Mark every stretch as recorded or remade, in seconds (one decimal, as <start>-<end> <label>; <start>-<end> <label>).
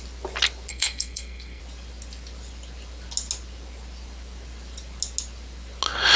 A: 0.0-0.7 recorded; 0.7-1.6 remade; 1.6-6.2 recorded